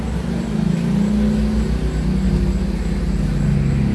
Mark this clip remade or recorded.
recorded